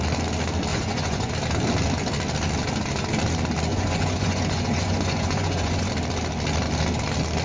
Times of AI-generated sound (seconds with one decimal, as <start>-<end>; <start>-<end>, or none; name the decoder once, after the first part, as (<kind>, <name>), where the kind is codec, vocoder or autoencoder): 0.7-1.3 (vocoder, Vocos); 3.7-5.9